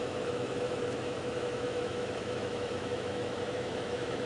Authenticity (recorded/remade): remade